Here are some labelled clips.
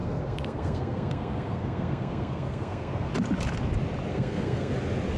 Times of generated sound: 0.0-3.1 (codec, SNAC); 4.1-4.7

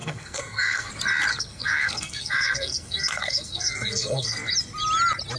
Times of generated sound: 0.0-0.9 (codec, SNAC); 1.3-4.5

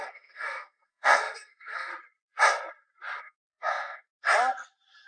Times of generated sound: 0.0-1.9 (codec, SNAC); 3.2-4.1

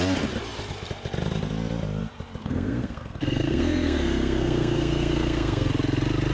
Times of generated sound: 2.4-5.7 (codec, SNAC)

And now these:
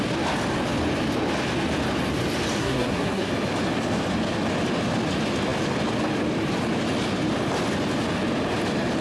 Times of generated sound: 2.6-3.3 (codec, SNAC)